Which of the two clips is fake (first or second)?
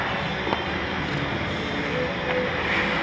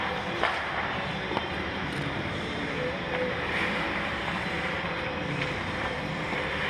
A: second